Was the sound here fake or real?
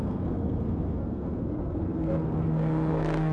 fake